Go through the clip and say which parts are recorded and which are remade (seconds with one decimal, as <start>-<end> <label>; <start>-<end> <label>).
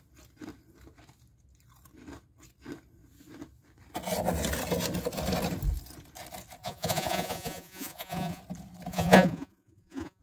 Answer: 0.0-6.6 recorded; 6.6-8.4 remade; 8.4-8.9 recorded; 8.9-10.2 remade